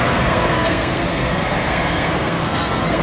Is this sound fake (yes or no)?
yes